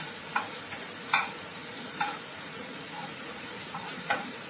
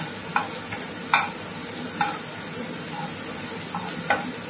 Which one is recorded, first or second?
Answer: second